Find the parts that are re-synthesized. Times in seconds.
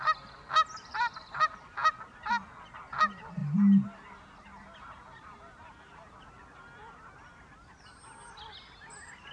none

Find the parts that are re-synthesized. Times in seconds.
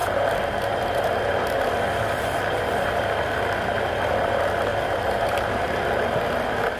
4.7-5.5 (vocoder, BigVGAN v2)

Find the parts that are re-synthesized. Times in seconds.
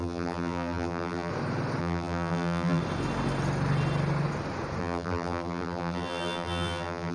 0.0-1.3 (vocoder, BigVGAN v2); 1.8-2.8; 4.8-7.1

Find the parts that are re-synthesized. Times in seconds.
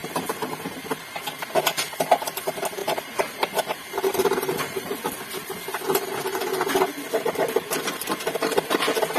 0.0-0.5 (vocoder, BigVGAN v2); 2.8-5.0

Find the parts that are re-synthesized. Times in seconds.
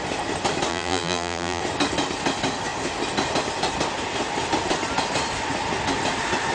0.7-1.6 (vocoder, BigVGAN v2)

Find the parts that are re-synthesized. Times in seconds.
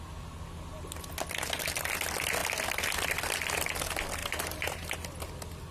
4.2-4.9 (vocoder, BigVGAN v2)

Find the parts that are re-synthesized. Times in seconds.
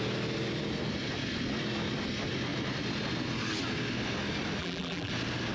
4.6-5.1 (vocoder, BigVGAN v2)